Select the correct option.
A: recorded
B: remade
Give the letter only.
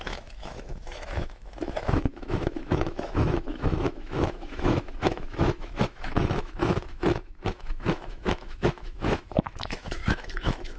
B